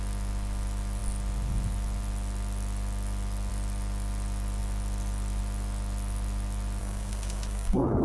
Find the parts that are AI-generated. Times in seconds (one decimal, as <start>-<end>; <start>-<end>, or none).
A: 6.8-8.0